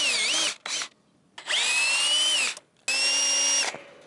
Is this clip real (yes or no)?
yes